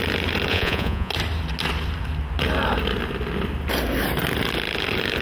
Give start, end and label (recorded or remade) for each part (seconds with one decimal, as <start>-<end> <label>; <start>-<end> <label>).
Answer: 0.0-0.5 recorded; 0.5-1.1 remade; 1.1-5.2 recorded